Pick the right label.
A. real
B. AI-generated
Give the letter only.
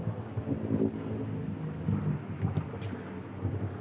A